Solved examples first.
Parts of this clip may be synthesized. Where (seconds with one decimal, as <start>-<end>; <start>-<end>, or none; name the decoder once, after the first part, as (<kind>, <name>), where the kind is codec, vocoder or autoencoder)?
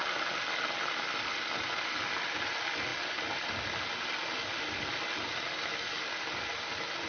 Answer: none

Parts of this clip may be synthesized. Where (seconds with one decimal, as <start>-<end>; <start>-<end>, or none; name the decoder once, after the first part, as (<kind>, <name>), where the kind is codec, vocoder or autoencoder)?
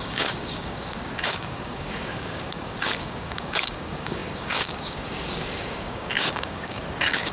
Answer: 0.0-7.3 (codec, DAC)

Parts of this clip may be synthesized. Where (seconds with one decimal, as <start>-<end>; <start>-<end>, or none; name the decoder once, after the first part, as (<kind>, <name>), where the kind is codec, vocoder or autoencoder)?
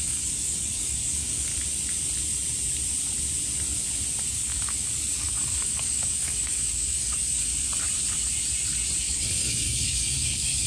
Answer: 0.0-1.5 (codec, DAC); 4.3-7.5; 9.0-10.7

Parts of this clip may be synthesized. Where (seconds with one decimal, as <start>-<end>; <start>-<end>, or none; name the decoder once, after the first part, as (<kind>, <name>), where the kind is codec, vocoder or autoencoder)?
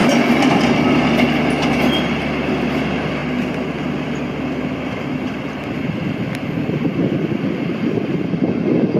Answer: none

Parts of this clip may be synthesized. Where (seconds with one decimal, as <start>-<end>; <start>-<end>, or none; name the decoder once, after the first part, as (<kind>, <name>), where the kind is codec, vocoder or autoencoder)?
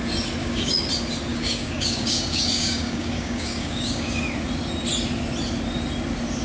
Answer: 0.4-0.9 (codec, DAC); 1.3-4.2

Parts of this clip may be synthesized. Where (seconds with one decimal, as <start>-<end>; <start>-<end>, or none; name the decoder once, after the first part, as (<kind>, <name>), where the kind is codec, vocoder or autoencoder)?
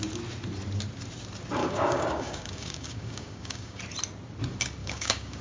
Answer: 1.6-3.8 (codec, DAC); 4.8-5.4